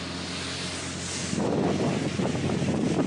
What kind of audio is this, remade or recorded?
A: recorded